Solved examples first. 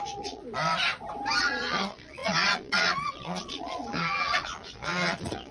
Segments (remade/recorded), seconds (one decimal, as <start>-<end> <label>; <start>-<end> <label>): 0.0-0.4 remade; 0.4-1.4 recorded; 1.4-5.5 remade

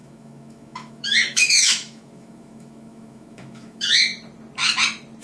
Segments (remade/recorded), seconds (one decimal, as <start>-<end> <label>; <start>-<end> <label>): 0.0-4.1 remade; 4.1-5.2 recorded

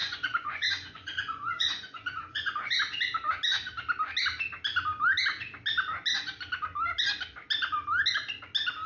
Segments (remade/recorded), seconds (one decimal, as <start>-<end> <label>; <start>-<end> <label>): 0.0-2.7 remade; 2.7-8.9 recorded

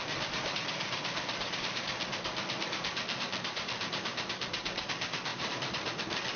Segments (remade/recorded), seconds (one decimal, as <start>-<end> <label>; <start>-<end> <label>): 0.0-6.4 remade